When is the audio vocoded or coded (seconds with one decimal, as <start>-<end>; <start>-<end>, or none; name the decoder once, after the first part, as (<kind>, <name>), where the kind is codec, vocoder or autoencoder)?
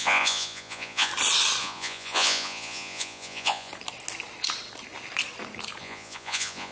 0.0-1.1 (vocoder, Vocos); 1.6-3.7; 5.8-6.7